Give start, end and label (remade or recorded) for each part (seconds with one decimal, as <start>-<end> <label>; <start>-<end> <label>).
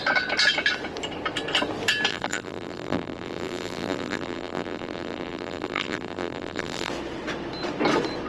0.0-2.1 recorded; 2.1-6.9 remade; 6.9-8.3 recorded